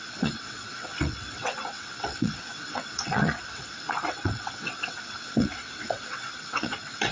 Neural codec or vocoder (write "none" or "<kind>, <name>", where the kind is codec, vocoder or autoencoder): vocoder, WaveNeXt